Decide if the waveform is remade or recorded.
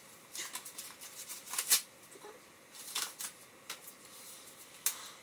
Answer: recorded